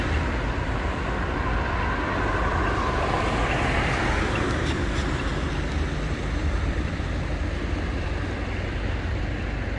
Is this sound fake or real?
real